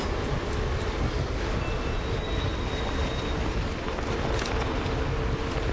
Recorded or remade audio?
recorded